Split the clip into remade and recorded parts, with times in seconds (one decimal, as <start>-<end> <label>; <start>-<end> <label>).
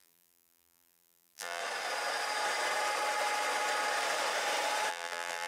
0.0-1.6 remade; 1.6-4.9 recorded; 4.9-5.5 remade